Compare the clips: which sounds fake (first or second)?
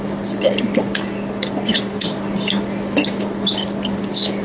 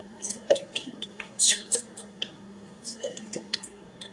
second